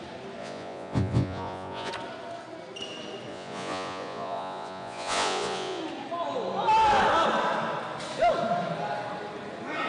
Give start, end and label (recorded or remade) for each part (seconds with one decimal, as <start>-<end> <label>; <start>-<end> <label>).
0.0-0.4 recorded; 0.4-1.9 remade; 1.9-3.3 recorded; 3.3-5.8 remade; 5.8-9.9 recorded